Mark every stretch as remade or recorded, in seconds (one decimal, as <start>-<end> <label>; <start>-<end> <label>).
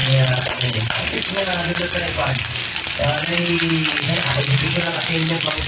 0.0-2.1 recorded; 2.1-2.6 remade; 2.6-5.7 recorded